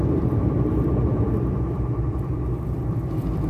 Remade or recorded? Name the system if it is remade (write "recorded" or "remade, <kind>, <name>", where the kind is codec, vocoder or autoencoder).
remade, vocoder, BigVGAN v2